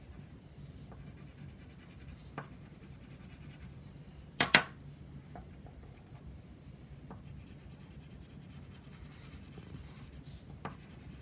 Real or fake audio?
real